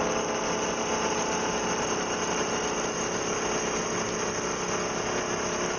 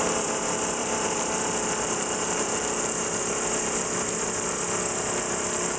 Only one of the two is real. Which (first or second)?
first